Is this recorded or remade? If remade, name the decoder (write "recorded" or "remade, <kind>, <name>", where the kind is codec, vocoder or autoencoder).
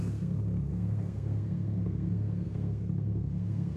remade, codec, SNAC